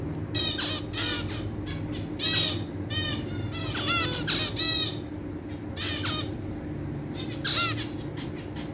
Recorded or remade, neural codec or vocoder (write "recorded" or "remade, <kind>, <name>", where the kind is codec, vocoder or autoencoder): recorded